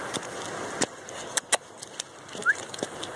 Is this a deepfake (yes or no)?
no